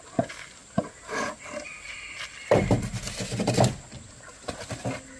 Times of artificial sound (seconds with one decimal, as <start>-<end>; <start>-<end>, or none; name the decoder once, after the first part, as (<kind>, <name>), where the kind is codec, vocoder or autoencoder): none

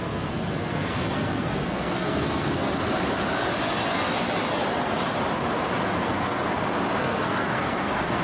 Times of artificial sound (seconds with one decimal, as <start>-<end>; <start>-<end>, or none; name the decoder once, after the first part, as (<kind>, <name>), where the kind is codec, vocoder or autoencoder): 0.0-2.7 (codec, SNAC); 6.0-6.4; 7.0-8.2

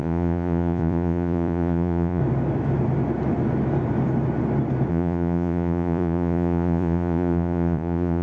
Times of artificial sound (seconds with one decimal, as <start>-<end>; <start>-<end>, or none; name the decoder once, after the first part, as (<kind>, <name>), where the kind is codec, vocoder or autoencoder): 0.0-2.2 (vocoder, Vocos); 4.9-8.2

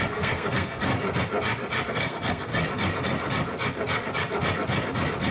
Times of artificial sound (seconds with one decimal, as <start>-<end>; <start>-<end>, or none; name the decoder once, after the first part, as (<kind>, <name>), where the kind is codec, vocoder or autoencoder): 0.0-0.9 (codec, SNAC); 1.9-2.5